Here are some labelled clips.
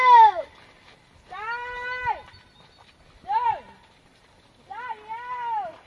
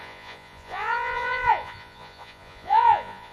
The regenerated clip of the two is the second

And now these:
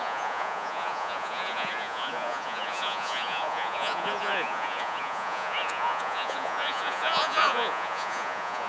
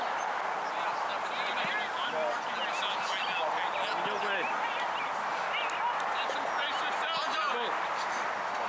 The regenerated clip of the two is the first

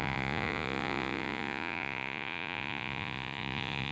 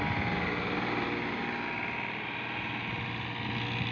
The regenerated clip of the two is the first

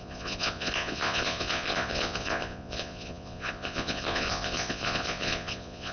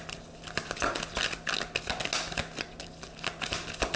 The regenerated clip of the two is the first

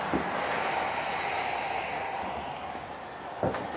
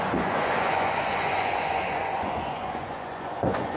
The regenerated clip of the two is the second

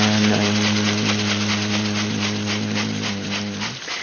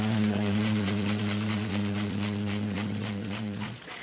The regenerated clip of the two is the second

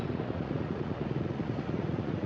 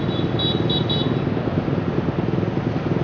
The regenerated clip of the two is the first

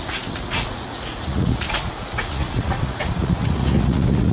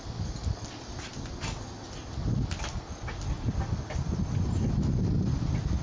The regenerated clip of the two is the first